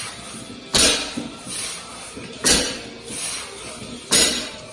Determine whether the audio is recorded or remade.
recorded